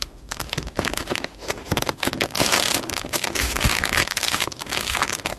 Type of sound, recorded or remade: remade